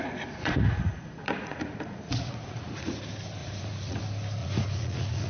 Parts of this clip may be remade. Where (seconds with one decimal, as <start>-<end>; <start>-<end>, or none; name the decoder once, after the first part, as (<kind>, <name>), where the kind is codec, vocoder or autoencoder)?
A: 0.0-3.0 (vocoder, Vocos); 3.4-4.0; 4.4-5.3